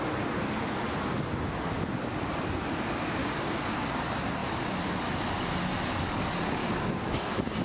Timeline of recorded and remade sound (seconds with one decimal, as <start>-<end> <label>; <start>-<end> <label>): 0.0-3.2 recorded; 3.2-4.0 remade; 4.0-6.6 recorded; 6.6-7.6 remade